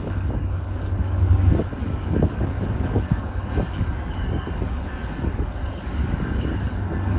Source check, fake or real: fake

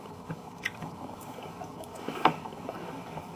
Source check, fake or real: fake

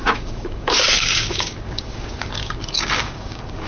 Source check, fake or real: fake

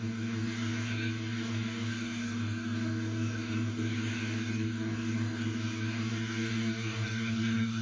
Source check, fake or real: fake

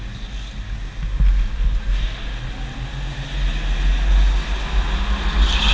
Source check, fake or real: real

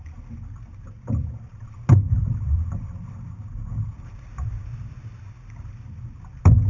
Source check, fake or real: real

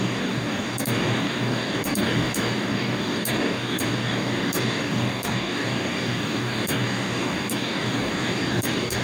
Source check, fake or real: fake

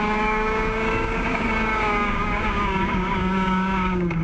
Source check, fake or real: fake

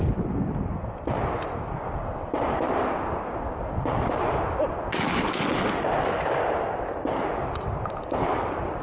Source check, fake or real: real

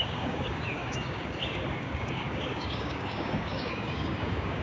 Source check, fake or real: fake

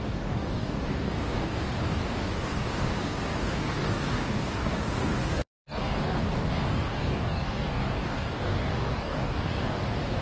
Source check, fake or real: fake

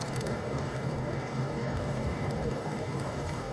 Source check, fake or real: fake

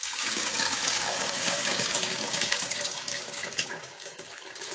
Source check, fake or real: fake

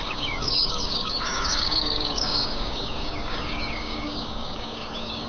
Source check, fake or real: fake